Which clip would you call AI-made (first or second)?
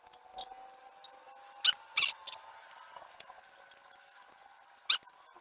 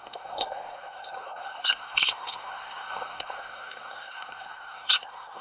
second